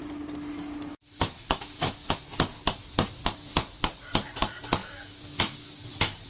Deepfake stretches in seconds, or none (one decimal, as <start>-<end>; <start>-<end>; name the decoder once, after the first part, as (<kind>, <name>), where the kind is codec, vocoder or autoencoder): 0.9-2.2 (autoencoder, DAC-VAE); 4.8-5.7